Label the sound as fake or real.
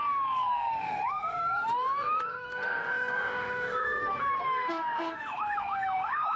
fake